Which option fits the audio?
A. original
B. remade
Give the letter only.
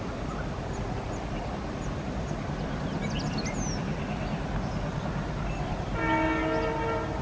A